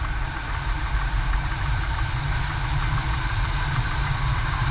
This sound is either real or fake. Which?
fake